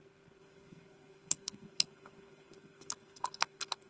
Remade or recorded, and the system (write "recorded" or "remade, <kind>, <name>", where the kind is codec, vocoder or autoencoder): remade, codec, SNAC